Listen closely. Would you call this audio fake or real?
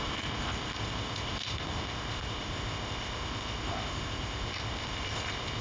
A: fake